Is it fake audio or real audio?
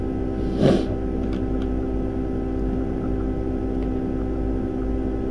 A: real